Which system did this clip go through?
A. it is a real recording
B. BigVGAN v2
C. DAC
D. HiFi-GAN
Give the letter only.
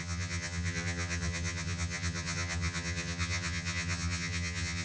D